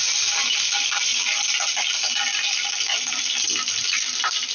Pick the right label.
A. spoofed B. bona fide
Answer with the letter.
B